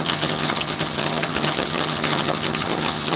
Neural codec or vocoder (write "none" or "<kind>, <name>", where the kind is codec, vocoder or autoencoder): vocoder, HiFi-GAN